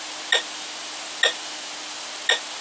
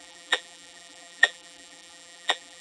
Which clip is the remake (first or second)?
second